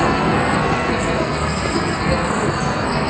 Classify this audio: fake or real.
fake